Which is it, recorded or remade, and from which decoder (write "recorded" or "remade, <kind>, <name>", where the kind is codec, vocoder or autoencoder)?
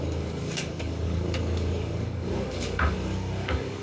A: remade, codec, DAC